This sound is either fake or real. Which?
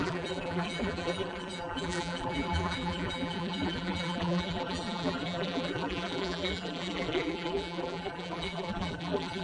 fake